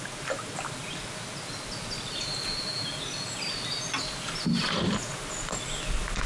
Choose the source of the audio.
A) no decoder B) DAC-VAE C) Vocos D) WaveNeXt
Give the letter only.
A